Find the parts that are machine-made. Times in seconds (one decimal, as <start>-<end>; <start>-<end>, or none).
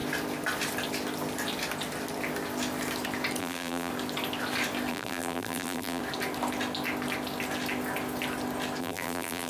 3.4-3.9; 4.9-6.0; 8.8-9.5